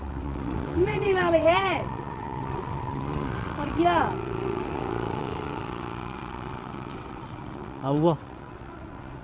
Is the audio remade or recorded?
remade